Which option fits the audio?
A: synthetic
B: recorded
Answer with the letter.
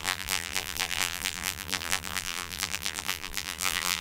A